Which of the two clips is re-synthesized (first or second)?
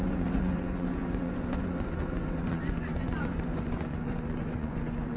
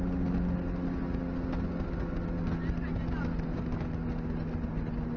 first